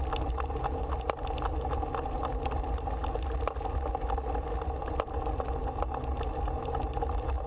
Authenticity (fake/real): real